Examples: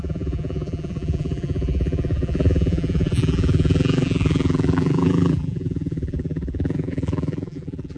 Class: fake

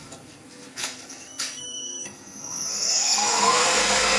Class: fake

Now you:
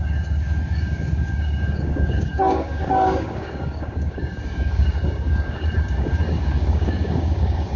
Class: fake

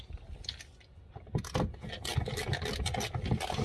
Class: real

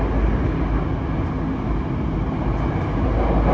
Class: real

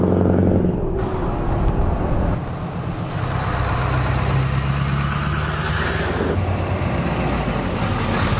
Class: real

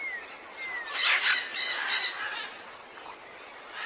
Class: real